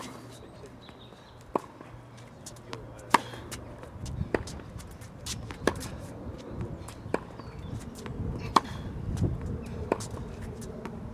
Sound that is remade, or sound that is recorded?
remade